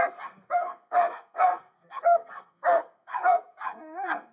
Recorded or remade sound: remade